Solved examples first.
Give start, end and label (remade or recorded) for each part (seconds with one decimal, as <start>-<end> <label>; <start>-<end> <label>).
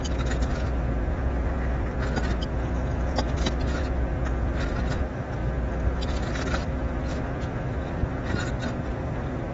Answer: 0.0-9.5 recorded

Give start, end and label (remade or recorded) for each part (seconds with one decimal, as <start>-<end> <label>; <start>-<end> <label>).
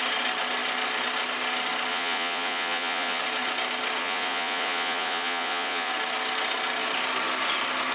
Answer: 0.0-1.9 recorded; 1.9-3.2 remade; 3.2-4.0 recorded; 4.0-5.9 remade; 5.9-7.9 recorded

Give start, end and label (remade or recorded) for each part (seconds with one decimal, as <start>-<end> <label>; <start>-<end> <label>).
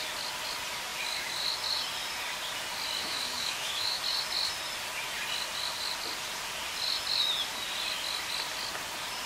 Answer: 0.0-3.0 recorded; 3.0-4.0 remade; 4.0-9.3 recorded